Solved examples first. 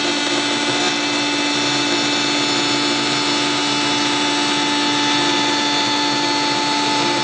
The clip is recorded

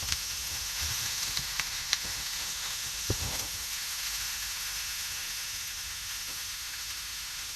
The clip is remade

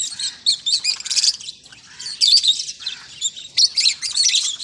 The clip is recorded